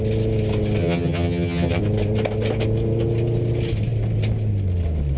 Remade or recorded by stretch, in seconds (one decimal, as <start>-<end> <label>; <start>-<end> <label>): 0.0-0.8 recorded; 0.8-1.8 remade; 1.8-5.2 recorded

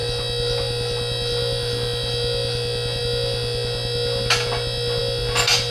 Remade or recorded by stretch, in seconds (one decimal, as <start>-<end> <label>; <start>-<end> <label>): 0.0-5.7 recorded

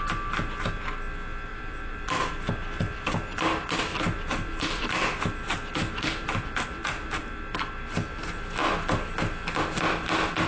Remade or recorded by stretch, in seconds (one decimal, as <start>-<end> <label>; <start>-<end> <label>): 0.0-1.5 recorded; 1.5-2.3 remade; 2.3-3.9 recorded; 3.9-7.2 remade; 7.2-10.5 recorded

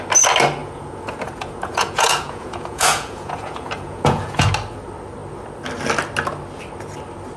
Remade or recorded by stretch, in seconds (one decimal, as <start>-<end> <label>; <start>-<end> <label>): 0.0-0.6 recorded; 0.6-4.5 remade; 4.5-7.4 recorded

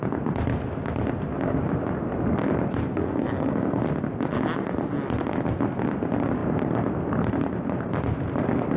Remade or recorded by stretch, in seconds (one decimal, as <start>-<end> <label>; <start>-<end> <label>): 0.0-2.9 recorded; 2.9-3.8 remade; 3.8-8.8 recorded

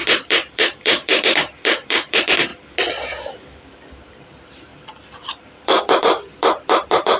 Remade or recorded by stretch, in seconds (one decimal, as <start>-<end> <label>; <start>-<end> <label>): 0.0-2.5 remade; 2.5-3.7 recorded; 3.7-7.2 remade

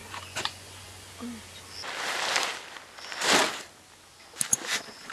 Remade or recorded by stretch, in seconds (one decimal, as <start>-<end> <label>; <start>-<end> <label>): 0.0-1.1 remade; 1.1-4.5 recorded; 4.5-5.1 remade